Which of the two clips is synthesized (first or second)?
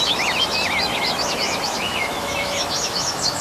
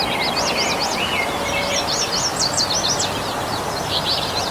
first